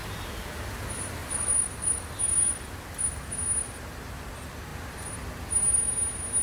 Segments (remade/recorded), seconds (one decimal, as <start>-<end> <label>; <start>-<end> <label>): 0.0-1.2 recorded; 1.2-2.5 remade; 2.5-4.7 recorded; 4.7-5.4 remade; 5.4-6.4 recorded